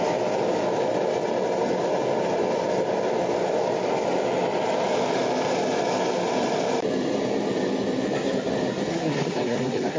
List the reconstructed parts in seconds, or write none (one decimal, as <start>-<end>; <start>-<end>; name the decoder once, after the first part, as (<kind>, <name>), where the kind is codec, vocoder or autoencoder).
8.9-10.0 (codec, SNAC)